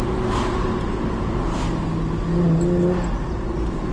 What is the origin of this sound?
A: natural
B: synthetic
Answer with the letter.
A